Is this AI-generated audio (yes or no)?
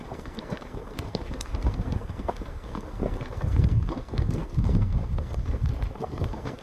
yes